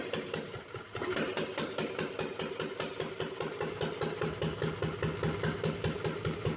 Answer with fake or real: real